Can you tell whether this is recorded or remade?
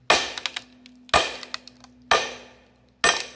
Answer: recorded